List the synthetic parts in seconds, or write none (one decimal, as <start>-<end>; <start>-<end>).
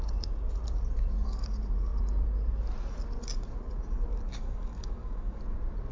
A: 4.1-5.4